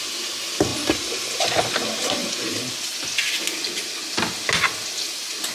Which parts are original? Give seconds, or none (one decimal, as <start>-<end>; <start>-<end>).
0.0-0.7; 1.7-2.2; 3.4-5.5